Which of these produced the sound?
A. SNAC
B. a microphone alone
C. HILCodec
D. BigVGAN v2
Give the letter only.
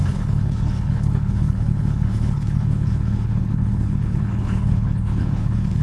C